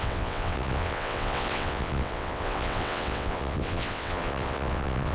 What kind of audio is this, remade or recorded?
remade